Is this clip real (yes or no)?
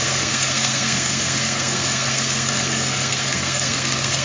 no